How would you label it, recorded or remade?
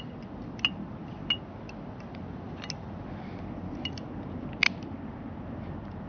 recorded